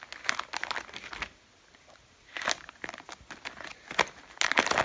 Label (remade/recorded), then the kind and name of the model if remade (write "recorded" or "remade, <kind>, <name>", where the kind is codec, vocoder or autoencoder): recorded